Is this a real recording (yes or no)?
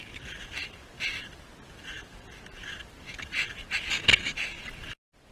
yes